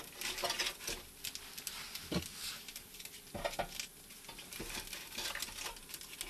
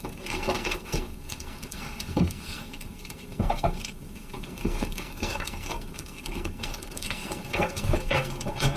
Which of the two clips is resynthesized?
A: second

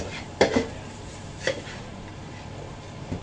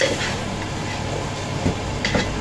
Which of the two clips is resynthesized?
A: first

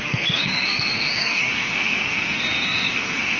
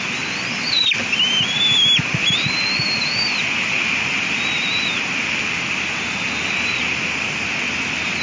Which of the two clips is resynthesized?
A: first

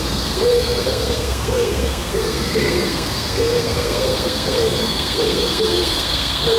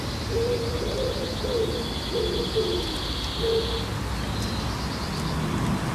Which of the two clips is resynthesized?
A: first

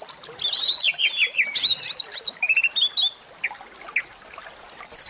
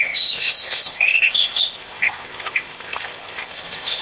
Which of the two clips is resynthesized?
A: second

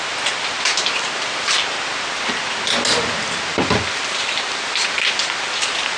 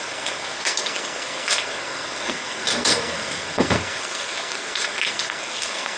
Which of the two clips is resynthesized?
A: second